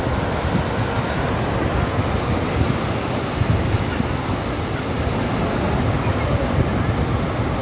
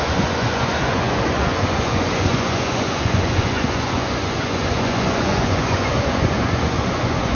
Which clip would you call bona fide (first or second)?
first